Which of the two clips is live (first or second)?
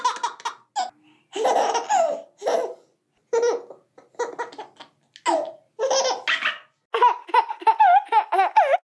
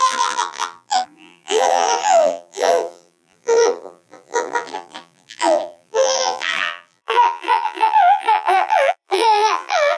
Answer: first